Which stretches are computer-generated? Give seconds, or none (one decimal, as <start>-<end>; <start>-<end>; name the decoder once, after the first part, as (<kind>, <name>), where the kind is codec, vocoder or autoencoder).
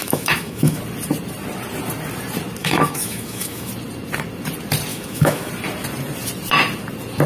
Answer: 0.0-0.8 (autoencoder, DAC-VAE); 2.6-3.7; 4.9-5.5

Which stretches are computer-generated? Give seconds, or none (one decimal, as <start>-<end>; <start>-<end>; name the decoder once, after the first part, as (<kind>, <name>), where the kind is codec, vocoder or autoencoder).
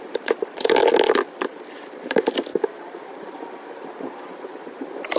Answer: 0.0-0.8 (vocoder, BigVGAN v2); 2.0-5.2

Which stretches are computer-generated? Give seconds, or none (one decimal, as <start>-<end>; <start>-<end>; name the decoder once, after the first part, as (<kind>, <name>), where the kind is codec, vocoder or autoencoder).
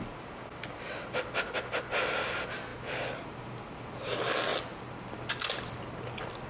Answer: none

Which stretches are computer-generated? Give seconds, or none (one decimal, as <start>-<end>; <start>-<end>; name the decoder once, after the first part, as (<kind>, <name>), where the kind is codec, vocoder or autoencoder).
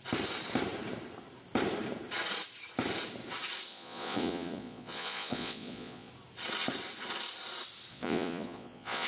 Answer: 3.7-6.1 (vocoder, Vocos); 7.9-9.1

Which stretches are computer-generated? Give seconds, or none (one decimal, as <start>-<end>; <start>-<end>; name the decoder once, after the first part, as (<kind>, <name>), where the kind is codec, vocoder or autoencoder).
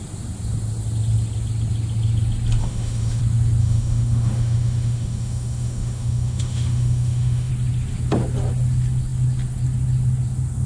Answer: 2.6-3.2 (autoencoder, DAC-VAE); 3.6-7.5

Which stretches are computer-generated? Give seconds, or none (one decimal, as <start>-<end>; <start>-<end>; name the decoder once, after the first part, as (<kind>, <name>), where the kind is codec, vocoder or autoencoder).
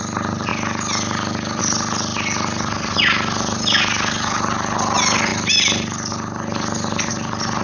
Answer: none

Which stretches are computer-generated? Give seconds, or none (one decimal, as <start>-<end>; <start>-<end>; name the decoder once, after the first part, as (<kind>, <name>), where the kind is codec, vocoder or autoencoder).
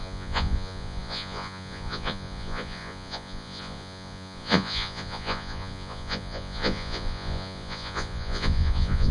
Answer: 0.0-9.1 (vocoder, Vocos)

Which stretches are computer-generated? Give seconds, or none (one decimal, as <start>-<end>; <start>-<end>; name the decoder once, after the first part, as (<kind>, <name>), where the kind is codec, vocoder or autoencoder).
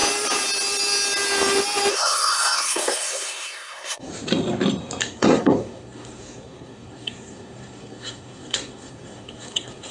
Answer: 1.9-4.1 (codec, SNAC); 5.0-9.9